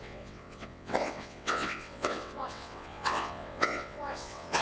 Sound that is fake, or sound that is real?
fake